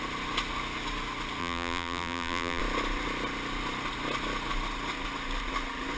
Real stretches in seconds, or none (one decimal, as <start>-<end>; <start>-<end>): 0.0-1.4; 2.6-6.0